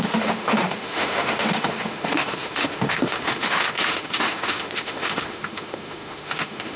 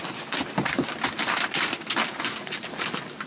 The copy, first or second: first